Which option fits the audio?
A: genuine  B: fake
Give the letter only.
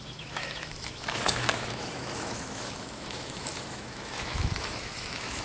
B